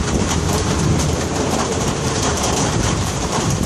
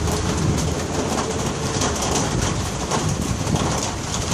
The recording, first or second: second